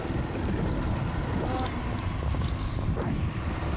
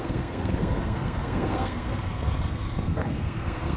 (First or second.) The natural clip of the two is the first